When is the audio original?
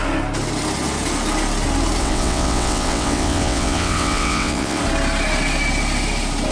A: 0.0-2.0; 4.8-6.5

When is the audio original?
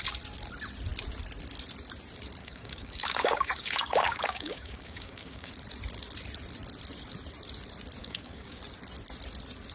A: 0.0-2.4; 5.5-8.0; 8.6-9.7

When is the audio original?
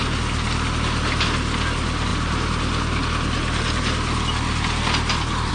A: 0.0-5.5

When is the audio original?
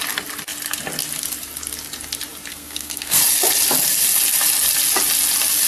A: 0.0-2.5; 3.2-5.7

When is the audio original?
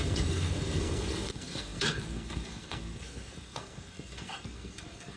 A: none